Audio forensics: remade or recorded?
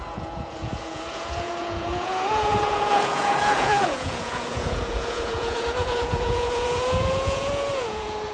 remade